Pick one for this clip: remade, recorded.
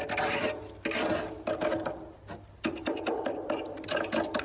recorded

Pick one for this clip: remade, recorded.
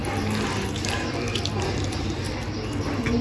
recorded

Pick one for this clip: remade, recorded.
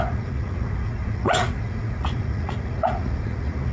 remade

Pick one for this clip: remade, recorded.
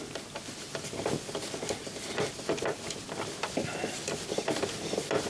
recorded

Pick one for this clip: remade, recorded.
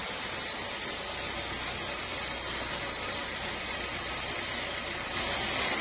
recorded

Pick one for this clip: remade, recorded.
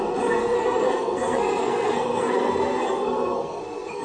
remade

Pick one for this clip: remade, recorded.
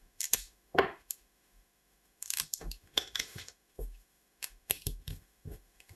remade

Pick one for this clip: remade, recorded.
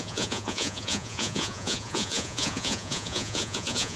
remade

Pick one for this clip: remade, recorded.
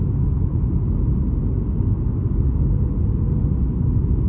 recorded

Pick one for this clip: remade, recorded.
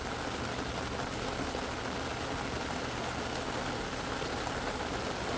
recorded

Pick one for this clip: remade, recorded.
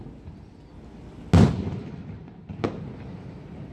recorded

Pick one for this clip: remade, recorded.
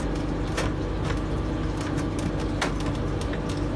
recorded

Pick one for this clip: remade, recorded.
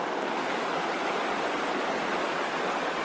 recorded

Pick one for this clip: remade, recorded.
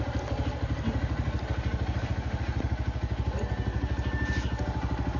recorded